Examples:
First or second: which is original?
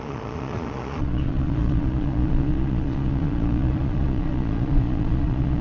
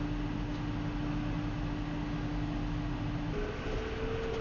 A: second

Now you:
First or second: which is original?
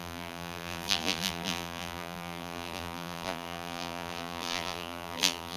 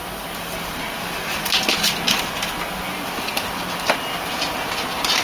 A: second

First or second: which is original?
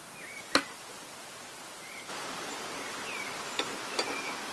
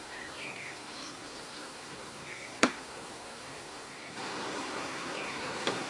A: first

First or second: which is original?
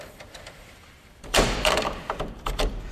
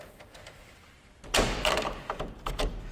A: second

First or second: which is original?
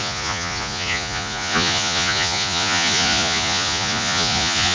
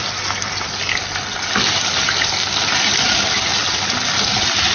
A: second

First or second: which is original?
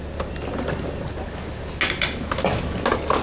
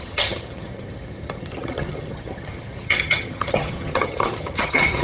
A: first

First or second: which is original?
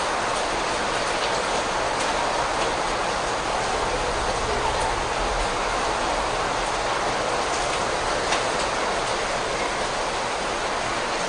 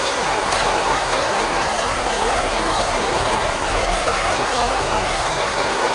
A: first